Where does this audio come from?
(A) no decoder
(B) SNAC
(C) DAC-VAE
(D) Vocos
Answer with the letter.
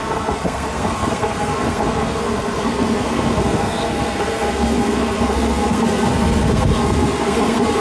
B